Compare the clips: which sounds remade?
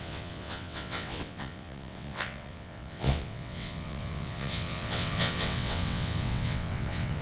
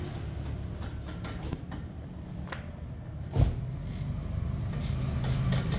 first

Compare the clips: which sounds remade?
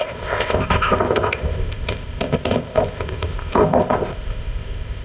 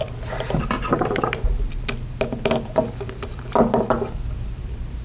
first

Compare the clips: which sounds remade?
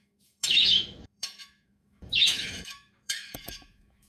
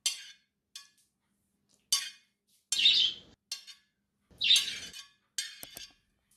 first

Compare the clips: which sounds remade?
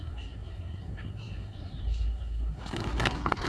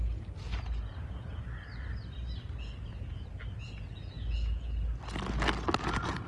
first